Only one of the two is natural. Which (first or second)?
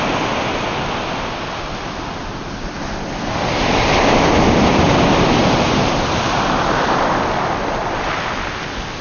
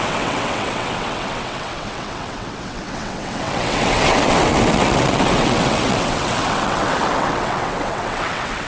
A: first